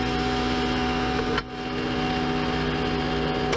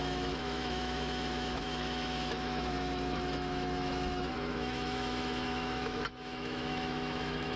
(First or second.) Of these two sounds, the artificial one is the second